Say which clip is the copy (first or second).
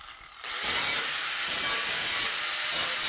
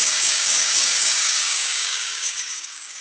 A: second